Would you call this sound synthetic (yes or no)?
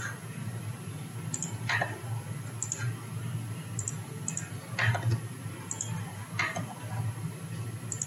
no